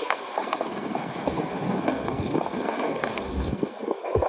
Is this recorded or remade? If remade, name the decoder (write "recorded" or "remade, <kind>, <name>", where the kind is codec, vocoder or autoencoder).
remade, codec, SNAC